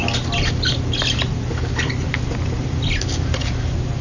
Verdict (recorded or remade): recorded